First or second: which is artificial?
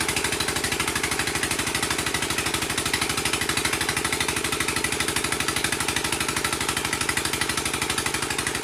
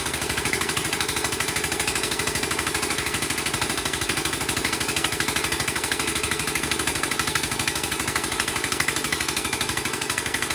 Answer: second